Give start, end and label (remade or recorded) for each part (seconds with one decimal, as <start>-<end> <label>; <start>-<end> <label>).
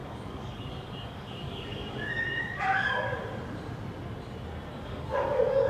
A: 0.0-3.2 remade; 3.2-4.8 recorded; 4.8-5.7 remade